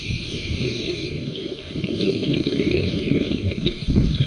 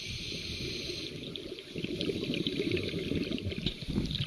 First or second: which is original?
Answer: second